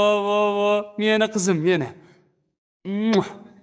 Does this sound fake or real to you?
fake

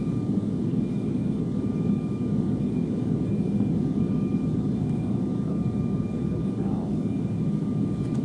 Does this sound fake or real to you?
fake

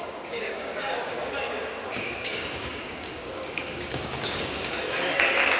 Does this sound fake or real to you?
fake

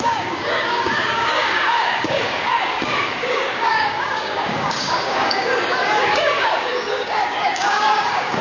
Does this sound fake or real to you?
fake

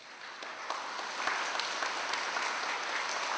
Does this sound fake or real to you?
real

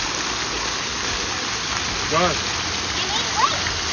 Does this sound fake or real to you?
real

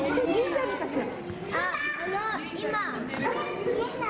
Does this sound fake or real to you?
real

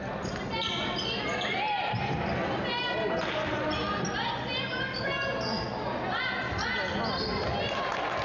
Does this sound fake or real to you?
real